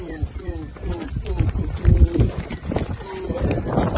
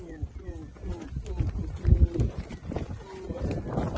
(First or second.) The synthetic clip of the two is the first